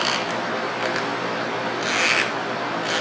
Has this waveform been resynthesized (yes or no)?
no